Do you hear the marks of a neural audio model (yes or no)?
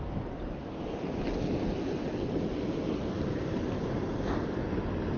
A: no